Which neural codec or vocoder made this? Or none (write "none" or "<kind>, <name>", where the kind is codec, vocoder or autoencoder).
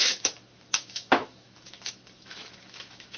autoencoder, DAC-VAE